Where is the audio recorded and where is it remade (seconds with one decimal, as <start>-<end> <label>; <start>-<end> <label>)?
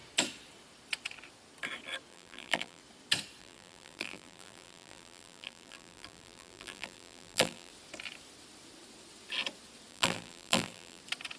0.0-2.1 recorded; 2.1-2.8 remade; 2.8-3.4 recorded; 3.4-7.7 remade; 7.7-9.9 recorded; 9.9-11.0 remade; 11.0-11.4 recorded